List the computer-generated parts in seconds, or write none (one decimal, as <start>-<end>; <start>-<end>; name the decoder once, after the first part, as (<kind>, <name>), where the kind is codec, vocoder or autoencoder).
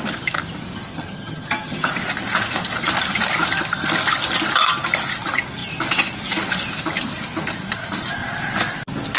0.9-1.9 (vocoder, HiFi-GAN)